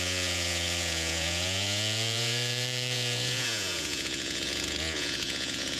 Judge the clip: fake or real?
fake